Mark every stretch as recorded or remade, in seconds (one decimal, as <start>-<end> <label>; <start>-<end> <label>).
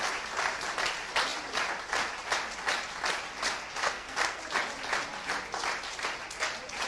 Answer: 0.0-3.8 recorded; 3.8-4.4 remade; 4.4-6.9 recorded